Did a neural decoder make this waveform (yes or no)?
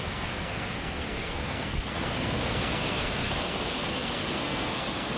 yes